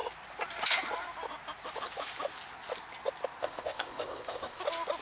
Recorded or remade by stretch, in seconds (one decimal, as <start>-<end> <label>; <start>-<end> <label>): 0.0-3.4 recorded; 3.4-4.6 remade; 4.6-5.0 recorded